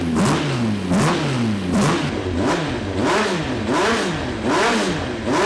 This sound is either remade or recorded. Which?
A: recorded